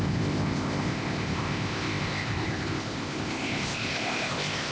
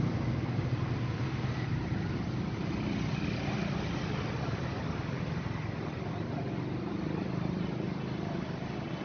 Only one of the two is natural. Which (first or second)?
second